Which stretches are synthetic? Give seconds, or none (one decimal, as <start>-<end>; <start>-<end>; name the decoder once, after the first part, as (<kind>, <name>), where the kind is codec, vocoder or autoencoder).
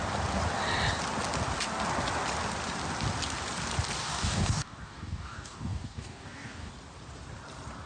4.0-6.7 (codec, DAC)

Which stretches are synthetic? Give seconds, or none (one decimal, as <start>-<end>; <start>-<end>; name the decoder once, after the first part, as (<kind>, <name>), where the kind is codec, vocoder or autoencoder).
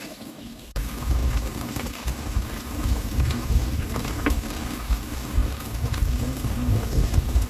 0.0-7.5 (codec, DAC)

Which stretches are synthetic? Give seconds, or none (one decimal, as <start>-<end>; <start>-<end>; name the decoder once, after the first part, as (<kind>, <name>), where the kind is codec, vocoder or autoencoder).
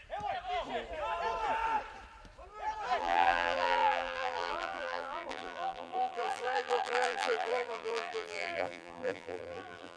3.0-10.0 (vocoder, BigVGAN v2)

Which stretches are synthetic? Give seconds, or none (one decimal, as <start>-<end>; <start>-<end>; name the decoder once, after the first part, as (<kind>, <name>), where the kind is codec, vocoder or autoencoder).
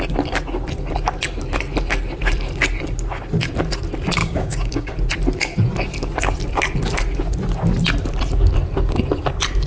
4.2-4.9 (codec, DAC)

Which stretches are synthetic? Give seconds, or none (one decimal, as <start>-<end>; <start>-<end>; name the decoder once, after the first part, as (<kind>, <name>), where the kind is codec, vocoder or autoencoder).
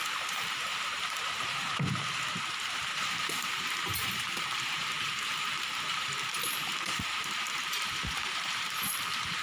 0.0-1.7 (vocoder, BigVGAN v2); 2.5-9.4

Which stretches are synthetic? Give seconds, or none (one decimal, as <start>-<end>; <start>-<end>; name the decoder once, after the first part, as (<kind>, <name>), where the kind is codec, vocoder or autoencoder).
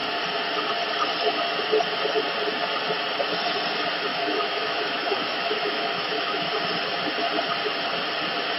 4.1-6.5 (autoencoder, DAC-VAE)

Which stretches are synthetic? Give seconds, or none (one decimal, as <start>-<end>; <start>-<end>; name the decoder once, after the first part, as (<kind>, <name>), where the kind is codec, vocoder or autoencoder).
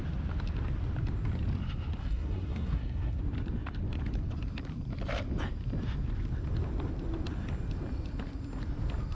2.0-3.2 (codec, SNAC)